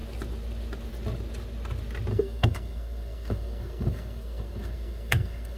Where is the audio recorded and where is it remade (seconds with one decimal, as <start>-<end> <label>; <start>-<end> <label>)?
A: 0.0-2.1 recorded; 2.1-5.6 remade